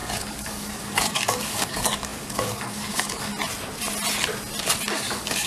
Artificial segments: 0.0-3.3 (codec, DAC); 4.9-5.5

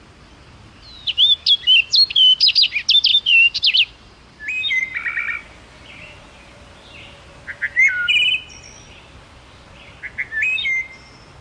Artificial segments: 3.1-4.8 (vocoder, BigVGAN v2)

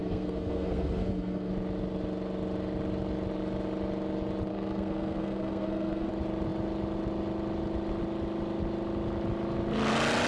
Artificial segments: 0.0-1.5 (codec, SNAC); 4.5-6.1

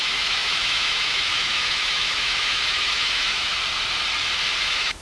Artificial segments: 0.0-3.5 (autoencoder, DAC-VAE); 4.6-5.0

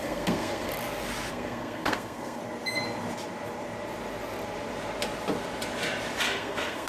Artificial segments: 0.0-0.7 (codec, SNAC); 1.3-2.4; 6.2-6.9

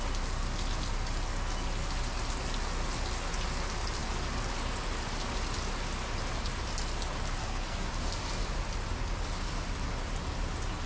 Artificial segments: 7.4-7.9 (codec, SNAC)